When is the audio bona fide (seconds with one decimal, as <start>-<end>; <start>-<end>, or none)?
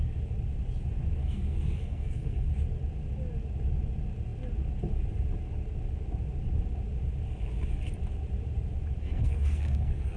0.0-1.2; 2.5-9.0